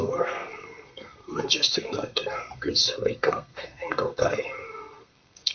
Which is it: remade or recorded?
remade